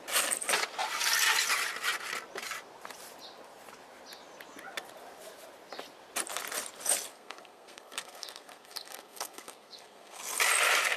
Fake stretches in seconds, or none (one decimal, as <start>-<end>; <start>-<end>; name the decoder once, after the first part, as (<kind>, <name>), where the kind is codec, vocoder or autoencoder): 7.1-10.2 (codec, SNAC)